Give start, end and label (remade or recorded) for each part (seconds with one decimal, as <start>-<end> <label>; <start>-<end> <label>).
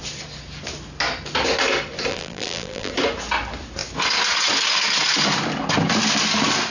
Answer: 0.0-2.1 recorded; 2.1-2.9 remade; 2.9-6.7 recorded